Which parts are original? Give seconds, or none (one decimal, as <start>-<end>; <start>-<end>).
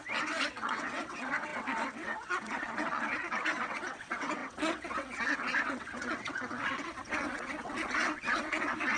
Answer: none